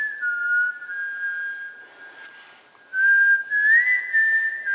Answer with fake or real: real